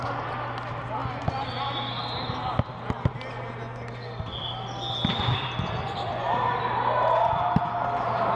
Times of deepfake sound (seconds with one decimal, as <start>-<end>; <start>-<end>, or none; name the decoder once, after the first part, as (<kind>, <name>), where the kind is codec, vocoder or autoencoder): none